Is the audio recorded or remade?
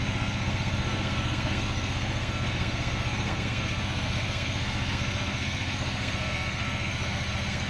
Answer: remade